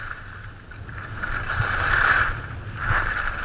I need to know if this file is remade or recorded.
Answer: recorded